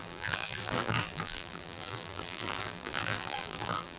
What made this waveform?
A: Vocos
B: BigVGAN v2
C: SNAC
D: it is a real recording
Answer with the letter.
B